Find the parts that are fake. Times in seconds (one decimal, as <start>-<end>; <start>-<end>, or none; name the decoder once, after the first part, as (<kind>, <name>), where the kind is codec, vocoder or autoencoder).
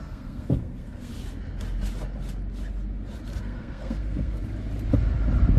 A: 0.0-1.1 (codec, SNAC); 3.4-4.4